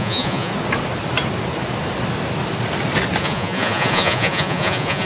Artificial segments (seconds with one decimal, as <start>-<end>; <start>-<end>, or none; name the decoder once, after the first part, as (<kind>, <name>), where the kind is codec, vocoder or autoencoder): 0.0-0.5 (vocoder, Vocos); 3.2-5.1